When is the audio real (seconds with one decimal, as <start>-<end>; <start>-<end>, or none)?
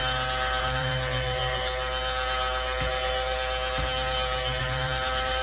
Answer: 0.0-0.6; 1.4-4.6